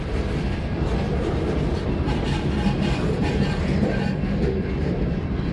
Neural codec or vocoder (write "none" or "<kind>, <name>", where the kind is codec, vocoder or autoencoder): none